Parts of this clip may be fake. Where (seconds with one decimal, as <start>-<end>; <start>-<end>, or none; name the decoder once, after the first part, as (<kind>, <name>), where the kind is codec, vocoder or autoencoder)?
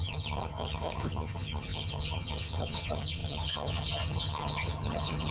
0.0-5.3 (vocoder, HiFi-GAN)